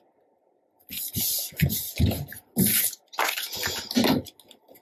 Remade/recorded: recorded